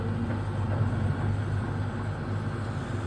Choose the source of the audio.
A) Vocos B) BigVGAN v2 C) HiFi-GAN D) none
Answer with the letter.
D